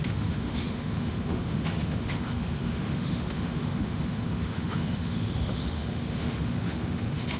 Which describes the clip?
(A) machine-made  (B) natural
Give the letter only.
A